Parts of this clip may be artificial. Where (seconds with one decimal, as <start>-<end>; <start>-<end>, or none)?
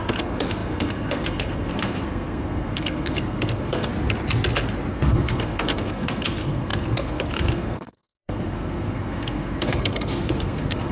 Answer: 0.0-3.9; 4.9-10.9